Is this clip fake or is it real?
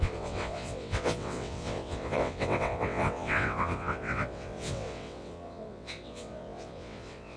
fake